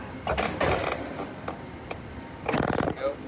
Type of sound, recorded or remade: recorded